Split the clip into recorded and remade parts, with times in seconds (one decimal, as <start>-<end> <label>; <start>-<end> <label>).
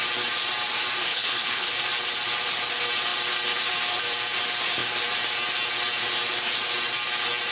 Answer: 0.0-1.1 recorded; 1.1-1.7 remade; 1.7-7.5 recorded